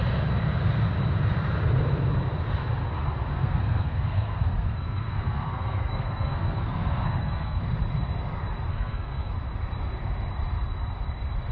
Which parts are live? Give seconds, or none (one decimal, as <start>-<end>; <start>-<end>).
0.0-3.3; 7.6-8.7; 9.3-11.5